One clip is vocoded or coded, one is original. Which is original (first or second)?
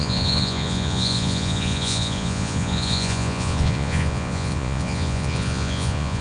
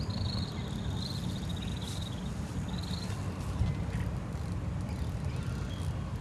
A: second